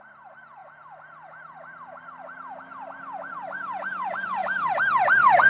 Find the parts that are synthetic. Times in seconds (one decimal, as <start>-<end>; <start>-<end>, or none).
0.0-0.6; 3.3-4.4; 4.9-5.5